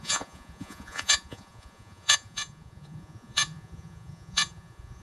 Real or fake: fake